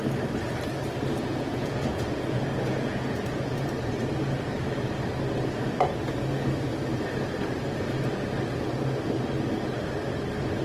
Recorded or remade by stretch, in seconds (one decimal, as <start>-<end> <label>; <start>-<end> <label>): 0.0-1.2 recorded; 1.2-3.7 remade; 3.7-10.6 recorded